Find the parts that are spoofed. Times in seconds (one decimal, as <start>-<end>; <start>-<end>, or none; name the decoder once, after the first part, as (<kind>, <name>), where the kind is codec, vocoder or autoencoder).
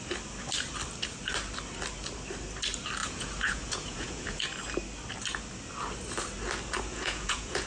3.0-4.4 (vocoder, Vocos); 6.9-7.7